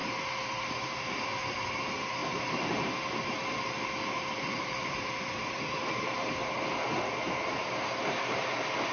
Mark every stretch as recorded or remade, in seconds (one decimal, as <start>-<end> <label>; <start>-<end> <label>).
0.0-1.3 remade; 1.3-2.2 recorded; 2.2-6.8 remade; 6.8-7.6 recorded; 7.6-8.5 remade; 8.5-8.9 recorded